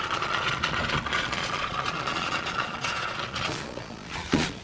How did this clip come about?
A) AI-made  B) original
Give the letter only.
A